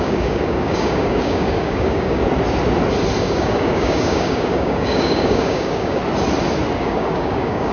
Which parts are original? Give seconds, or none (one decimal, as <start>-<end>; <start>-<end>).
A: 2.2-3.2; 6.0-6.8